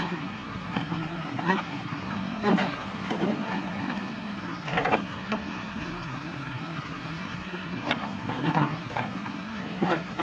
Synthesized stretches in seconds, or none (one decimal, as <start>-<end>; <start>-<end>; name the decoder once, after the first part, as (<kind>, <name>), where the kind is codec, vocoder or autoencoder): 0.0-10.2 (codec, SNAC)